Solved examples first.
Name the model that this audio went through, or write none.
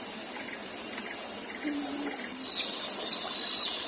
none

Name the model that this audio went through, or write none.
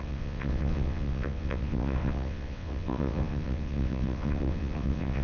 vocoder, WaveNeXt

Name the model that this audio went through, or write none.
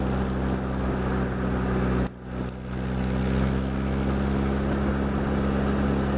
none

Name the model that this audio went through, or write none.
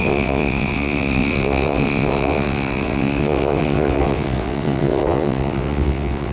vocoder, WaveNeXt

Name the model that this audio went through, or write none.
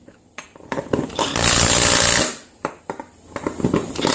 none